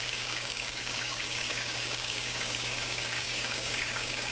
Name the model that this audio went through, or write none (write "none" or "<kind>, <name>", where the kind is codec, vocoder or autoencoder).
codec, DAC